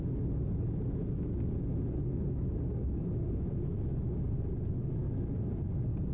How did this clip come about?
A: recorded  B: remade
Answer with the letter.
A